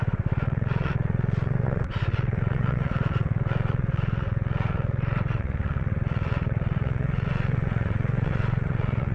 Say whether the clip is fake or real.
fake